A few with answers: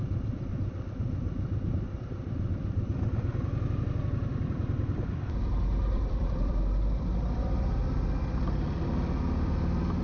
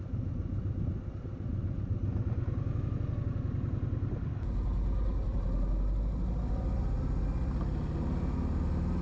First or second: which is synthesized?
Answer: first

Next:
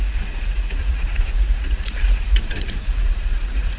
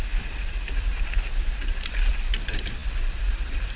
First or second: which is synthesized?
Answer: first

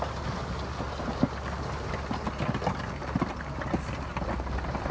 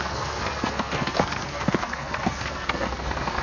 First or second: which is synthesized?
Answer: second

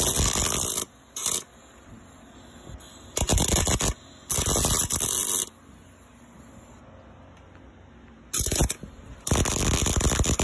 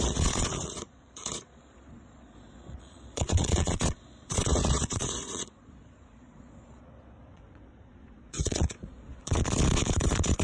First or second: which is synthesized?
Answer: second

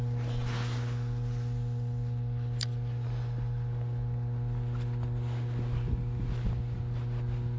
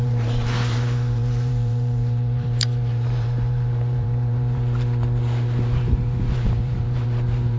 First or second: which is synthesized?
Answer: second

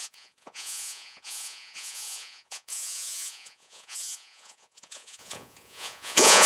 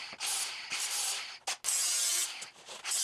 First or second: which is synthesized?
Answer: first